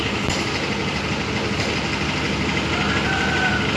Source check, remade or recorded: recorded